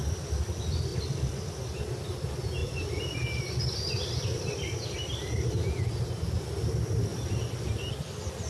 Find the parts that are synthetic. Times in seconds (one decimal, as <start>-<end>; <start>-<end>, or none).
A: 0.9-1.5; 2.6-6.4; 7.1-7.7